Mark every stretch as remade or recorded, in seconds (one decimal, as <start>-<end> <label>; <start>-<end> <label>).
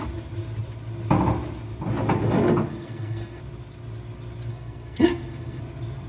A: 0.0-2.7 recorded; 2.7-3.4 remade; 3.4-4.5 recorded; 4.5-5.6 remade; 5.6-6.1 recorded